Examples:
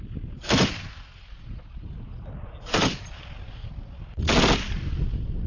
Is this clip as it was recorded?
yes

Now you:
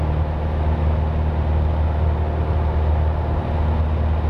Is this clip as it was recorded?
yes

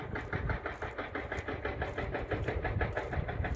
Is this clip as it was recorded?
yes